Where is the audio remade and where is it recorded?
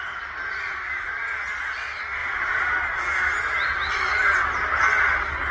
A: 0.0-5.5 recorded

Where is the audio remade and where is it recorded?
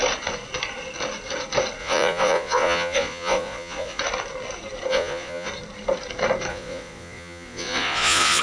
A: 0.0-1.8 recorded; 1.8-4.0 remade; 4.0-4.9 recorded; 4.9-5.5 remade; 5.5-6.5 recorded; 6.5-8.4 remade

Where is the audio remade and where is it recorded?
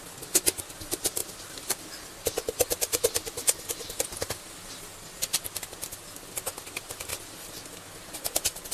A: 0.0-8.7 recorded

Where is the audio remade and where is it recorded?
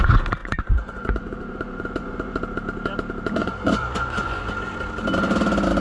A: 0.0-0.4 recorded; 0.4-2.4 remade; 2.4-3.4 recorded; 3.4-4.7 remade; 4.7-5.8 recorded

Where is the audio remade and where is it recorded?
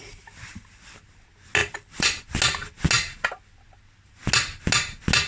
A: 0.0-1.6 recorded; 1.6-2.2 remade; 2.2-5.3 recorded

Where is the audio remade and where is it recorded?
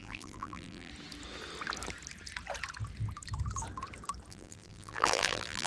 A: 0.0-0.9 remade; 0.9-4.3 recorded; 4.3-5.7 remade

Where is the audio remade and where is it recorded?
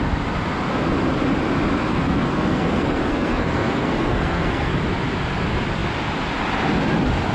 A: 0.0-1.9 recorded; 1.9-4.7 remade; 4.7-7.3 recorded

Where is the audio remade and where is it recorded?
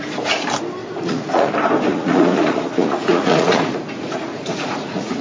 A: 0.0-0.8 recorded; 0.8-1.5 remade; 1.5-1.9 recorded; 1.9-5.2 remade